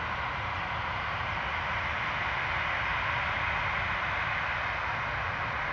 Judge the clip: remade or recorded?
recorded